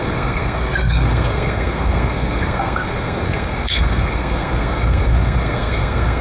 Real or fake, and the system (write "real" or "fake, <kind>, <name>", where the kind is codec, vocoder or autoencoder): fake, codec, SNAC